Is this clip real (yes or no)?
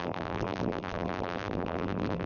no